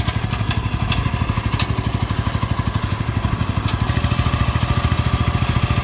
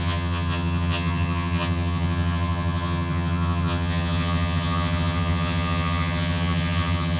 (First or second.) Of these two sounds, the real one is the first